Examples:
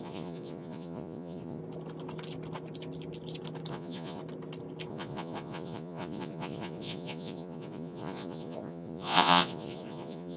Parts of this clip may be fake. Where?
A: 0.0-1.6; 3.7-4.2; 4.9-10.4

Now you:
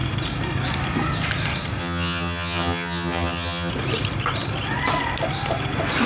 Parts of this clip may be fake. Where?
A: 1.8-3.7